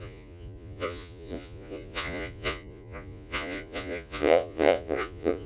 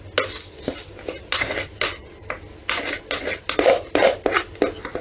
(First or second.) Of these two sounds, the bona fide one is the second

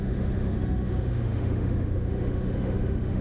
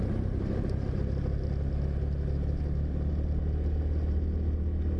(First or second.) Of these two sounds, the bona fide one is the second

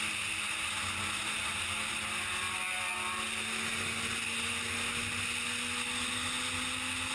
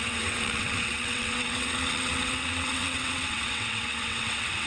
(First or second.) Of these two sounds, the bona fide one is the first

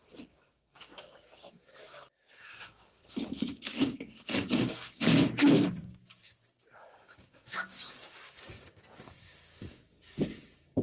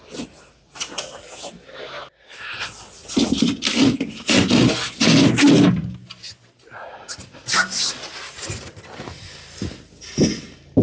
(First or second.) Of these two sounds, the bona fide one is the second